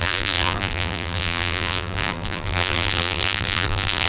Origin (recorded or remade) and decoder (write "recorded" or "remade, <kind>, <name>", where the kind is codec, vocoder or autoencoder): remade, vocoder, BigVGAN v2